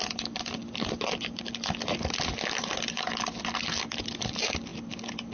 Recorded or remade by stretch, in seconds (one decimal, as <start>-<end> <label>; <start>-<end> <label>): 0.0-5.3 recorded